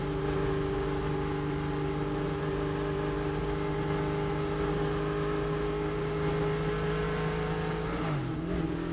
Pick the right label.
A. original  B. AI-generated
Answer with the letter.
A